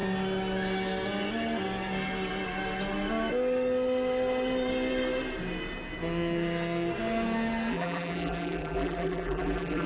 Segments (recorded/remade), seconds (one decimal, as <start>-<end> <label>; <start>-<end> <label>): 0.0-7.7 recorded; 7.7-9.9 remade